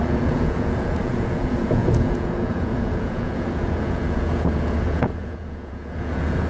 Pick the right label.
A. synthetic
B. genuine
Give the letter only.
A